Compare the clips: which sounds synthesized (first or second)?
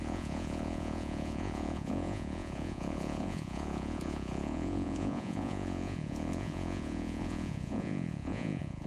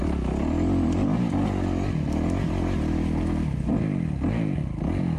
first